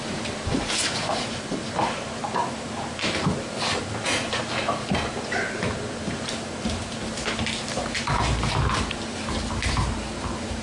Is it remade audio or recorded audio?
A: remade